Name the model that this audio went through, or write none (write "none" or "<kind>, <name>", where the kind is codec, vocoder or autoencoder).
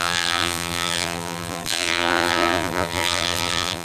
vocoder, BigVGAN v2